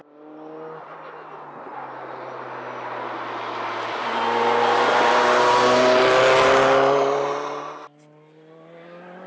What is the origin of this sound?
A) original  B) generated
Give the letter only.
A